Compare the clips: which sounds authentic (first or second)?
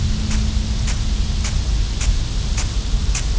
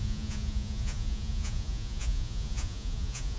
first